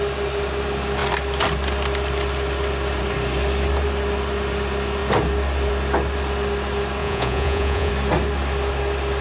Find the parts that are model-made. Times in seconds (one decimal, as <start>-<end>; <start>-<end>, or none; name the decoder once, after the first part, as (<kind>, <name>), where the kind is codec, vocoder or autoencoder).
7.0-7.9 (vocoder, Vocos)